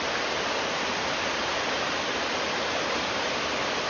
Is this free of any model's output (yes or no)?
yes